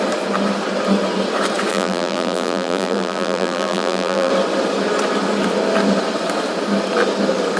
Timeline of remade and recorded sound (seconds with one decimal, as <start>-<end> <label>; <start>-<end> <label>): 0.0-1.7 recorded; 1.7-4.3 remade; 4.3-7.6 recorded